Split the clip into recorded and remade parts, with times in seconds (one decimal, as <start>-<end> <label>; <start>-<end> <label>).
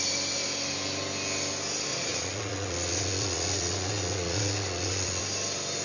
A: 0.0-1.9 recorded; 1.9-5.2 remade; 5.2-5.8 recorded